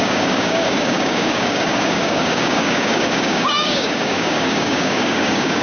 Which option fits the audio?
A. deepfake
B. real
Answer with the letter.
A